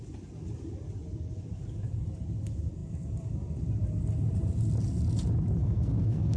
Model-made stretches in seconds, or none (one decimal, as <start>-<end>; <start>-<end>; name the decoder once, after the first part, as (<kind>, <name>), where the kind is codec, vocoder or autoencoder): 5.6-6.4 (codec, SNAC)